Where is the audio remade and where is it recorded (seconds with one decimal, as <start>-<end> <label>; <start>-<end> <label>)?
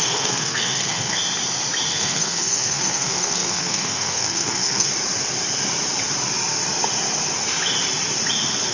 0.0-1.2 remade; 1.2-1.9 recorded; 1.9-4.9 remade; 4.9-8.7 recorded